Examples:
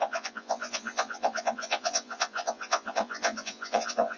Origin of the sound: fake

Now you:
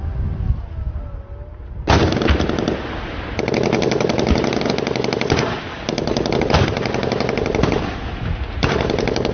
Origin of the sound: real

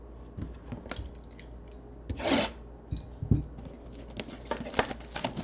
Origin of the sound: real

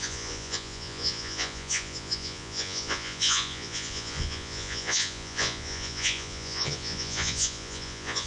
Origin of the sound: fake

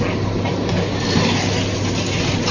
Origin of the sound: real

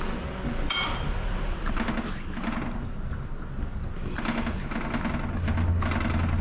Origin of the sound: real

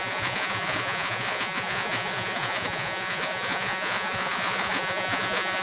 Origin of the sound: fake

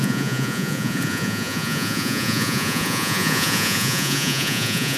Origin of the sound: fake